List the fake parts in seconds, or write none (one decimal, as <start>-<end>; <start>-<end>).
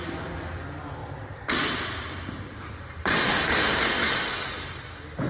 1.0-3.3